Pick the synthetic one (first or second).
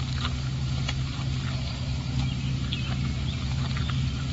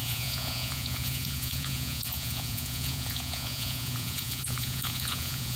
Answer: second